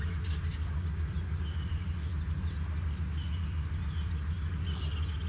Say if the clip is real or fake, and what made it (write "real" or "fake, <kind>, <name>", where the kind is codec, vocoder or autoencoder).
real